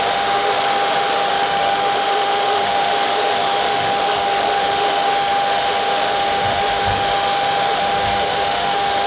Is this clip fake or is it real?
fake